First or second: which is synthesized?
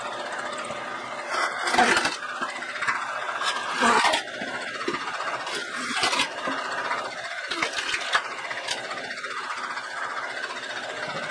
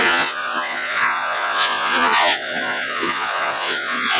second